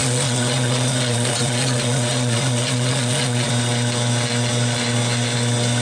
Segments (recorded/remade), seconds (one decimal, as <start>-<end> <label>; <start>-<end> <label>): 0.0-3.5 remade; 3.5-5.8 recorded